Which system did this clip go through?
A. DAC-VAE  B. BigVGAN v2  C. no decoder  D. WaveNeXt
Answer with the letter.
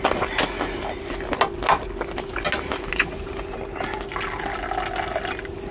C